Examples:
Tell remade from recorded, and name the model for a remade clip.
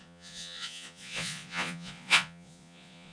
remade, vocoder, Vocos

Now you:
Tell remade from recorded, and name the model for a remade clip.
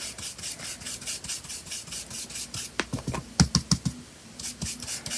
recorded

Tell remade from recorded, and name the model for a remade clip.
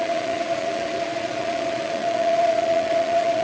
remade, vocoder, Vocos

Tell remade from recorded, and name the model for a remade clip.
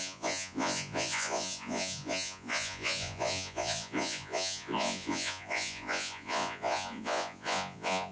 remade, vocoder, Vocos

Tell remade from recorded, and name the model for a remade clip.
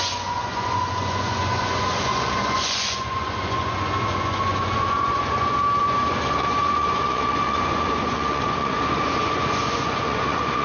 remade, vocoder, Vocos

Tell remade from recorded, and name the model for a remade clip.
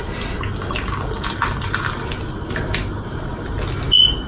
recorded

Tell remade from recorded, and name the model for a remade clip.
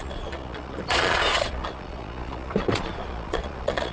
remade, vocoder, Vocos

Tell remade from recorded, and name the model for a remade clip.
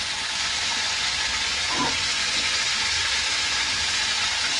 remade, vocoder, Vocos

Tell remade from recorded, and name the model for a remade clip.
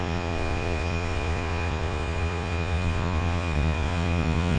remade, vocoder, Vocos